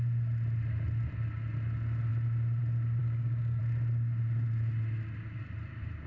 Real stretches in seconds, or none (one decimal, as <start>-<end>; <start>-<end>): 0.0-3.0; 3.6-6.1